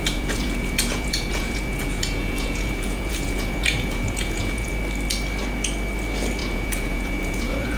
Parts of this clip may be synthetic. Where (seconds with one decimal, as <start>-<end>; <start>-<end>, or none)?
0.0-4.7; 6.4-7.8